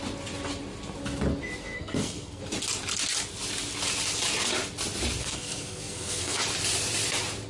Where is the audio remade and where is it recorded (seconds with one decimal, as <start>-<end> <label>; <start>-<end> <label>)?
0.0-1.6 recorded; 1.6-2.4 remade; 2.4-5.2 recorded; 5.2-6.4 remade; 6.4-7.5 recorded